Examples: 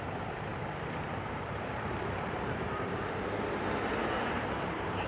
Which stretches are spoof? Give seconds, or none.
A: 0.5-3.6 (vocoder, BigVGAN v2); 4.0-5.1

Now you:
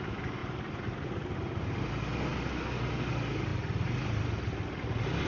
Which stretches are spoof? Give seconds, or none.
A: 0.4-1.4 (vocoder, BigVGAN v2)

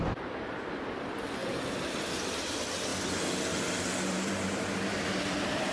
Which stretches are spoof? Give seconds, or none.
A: 0.0-1.4 (vocoder, BigVGAN v2); 2.1-2.9; 3.6-5.7

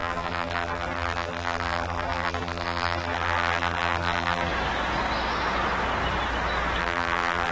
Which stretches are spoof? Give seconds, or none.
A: 0.0-4.5 (vocoder, BigVGAN v2); 6.8-7.5

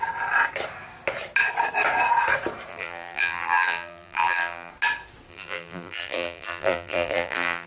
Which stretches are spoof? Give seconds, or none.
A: 2.7-4.7 (vocoder, BigVGAN v2); 5.3-7.7

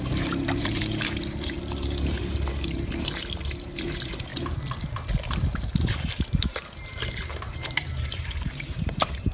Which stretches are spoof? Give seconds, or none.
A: 0.0-4.3 (vocoder, BigVGAN v2); 5.2-9.3

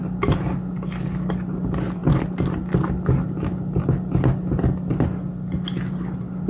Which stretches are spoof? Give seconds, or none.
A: none

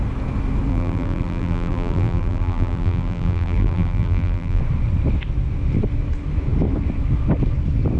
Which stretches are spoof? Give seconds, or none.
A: 0.7-4.6 (vocoder, BigVGAN v2)